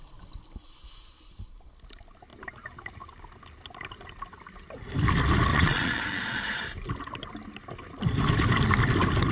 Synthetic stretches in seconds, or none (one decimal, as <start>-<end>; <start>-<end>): 5.5-6.6